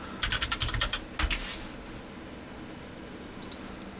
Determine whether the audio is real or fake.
real